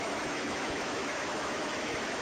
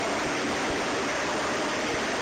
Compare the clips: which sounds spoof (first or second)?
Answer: first